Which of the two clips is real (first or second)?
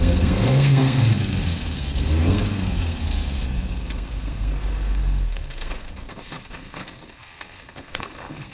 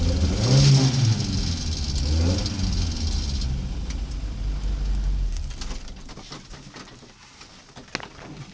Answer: second